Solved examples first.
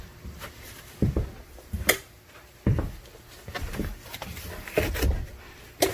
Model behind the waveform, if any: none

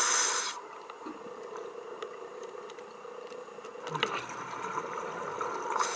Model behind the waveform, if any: none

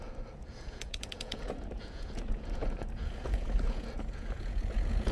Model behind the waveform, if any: vocoder, Vocos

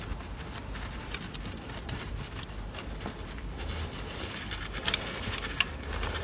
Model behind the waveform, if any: none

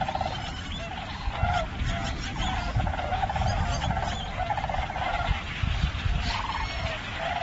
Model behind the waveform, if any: none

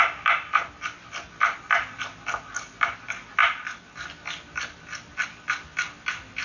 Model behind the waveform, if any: none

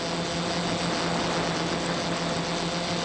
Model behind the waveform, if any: none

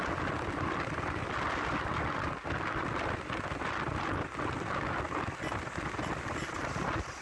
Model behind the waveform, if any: none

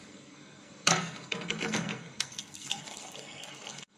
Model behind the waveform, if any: codec, SNAC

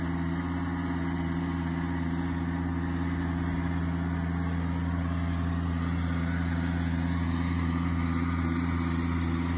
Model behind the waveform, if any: none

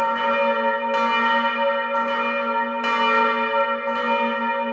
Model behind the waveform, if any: none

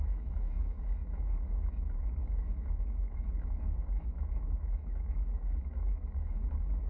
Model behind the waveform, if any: autoencoder, DAC-VAE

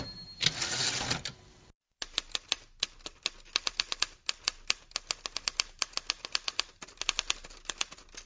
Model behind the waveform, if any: none